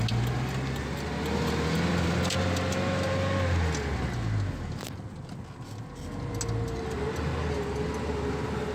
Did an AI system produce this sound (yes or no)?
no